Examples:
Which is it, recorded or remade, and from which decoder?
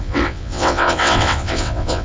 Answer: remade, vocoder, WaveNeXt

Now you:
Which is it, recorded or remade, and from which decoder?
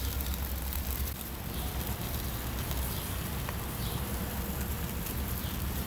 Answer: remade, vocoder, BigVGAN v2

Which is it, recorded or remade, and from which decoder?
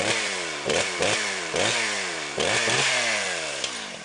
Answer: remade, vocoder, BigVGAN v2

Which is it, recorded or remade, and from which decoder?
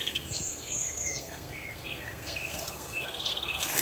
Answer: remade, codec, SNAC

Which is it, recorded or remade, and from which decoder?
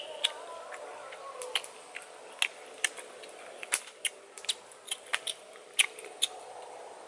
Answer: recorded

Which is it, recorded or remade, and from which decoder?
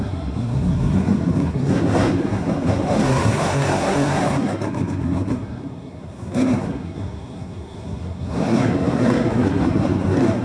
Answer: remade, codec, SNAC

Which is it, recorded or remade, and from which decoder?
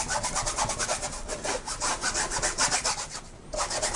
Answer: recorded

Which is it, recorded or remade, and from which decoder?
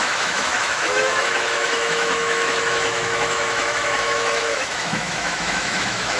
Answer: remade, autoencoder, DAC-VAE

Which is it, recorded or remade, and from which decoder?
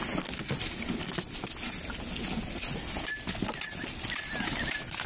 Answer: recorded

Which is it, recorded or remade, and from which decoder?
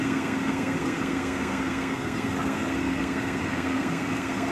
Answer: remade, codec, SNAC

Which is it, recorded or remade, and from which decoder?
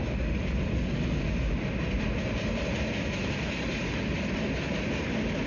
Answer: recorded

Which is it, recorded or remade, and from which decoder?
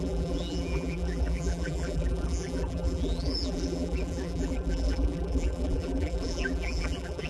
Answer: remade, vocoder, BigVGAN v2